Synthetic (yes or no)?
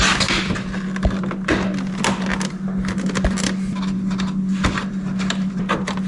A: no